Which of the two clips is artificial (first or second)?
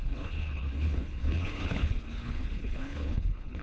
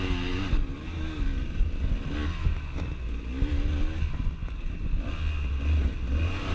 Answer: first